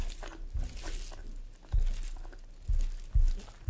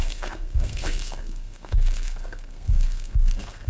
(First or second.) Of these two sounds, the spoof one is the second